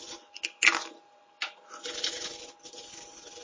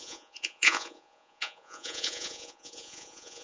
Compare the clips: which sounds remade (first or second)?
second